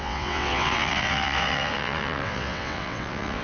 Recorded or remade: remade